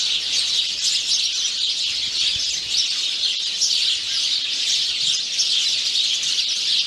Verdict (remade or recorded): recorded